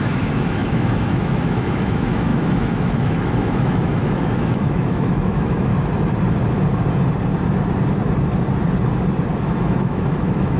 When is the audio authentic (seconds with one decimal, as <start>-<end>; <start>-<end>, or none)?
5.7-9.4